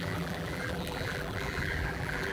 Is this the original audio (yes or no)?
no